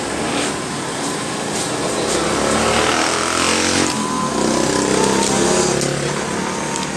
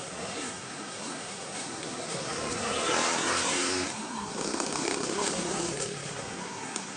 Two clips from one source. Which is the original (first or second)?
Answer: first